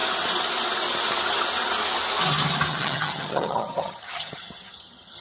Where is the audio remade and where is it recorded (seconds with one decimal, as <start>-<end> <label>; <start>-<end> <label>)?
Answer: 0.0-2.7 recorded; 2.7-5.2 remade

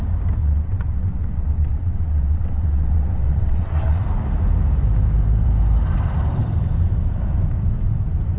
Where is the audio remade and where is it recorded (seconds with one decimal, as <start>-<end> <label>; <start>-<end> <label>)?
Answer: 0.0-0.4 recorded; 0.4-4.0 remade; 4.0-8.4 recorded

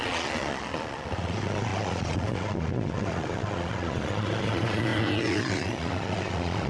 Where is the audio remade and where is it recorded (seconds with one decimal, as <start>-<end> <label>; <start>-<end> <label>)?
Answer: 0.0-6.7 remade

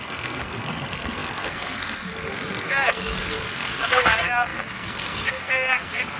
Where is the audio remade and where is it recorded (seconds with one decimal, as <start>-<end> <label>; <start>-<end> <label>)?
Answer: 0.0-6.2 remade

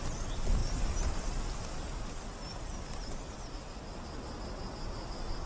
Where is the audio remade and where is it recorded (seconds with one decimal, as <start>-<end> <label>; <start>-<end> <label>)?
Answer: 0.0-5.5 recorded

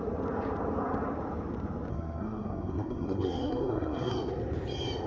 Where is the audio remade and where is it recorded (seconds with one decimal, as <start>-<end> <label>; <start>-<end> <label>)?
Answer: 0.0-1.9 recorded; 1.9-4.1 remade; 4.1-5.1 recorded

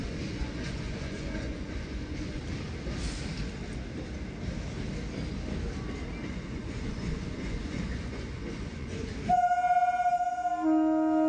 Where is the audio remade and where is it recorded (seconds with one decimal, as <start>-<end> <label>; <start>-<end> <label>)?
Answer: 0.0-2.4 remade; 2.4-6.2 recorded; 6.2-9.1 remade; 9.1-11.3 recorded

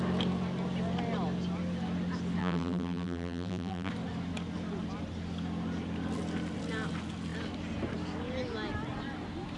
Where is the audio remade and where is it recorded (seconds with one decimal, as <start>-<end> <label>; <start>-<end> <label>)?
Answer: 0.0-2.4 recorded; 2.4-3.9 remade; 3.9-9.6 recorded